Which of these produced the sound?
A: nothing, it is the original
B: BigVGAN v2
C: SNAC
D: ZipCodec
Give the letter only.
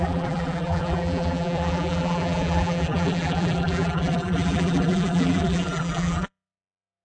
B